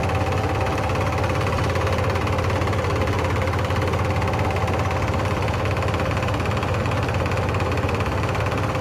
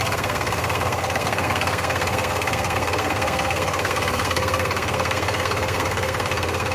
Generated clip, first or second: second